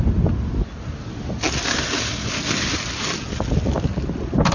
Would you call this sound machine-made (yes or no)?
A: no